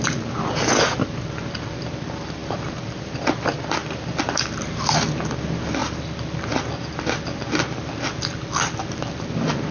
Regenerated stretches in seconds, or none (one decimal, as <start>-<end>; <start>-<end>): 2.4-3.3; 3.8-5.0; 5.8-7.0

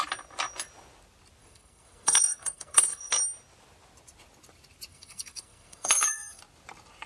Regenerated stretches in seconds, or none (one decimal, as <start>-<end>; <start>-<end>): 1.4-3.2; 4.9-6.4

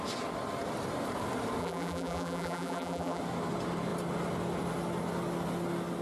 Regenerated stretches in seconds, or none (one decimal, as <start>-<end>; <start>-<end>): 1.6-3.2

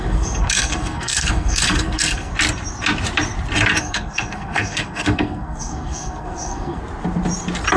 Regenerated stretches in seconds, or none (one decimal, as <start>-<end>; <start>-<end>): 0.0-2.3; 3.8-6.8

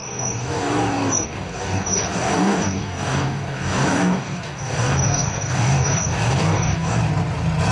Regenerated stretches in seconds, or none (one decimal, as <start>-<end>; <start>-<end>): 0.0-7.0

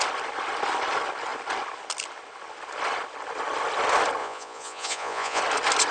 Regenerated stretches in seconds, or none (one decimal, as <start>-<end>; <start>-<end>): 4.2-5.4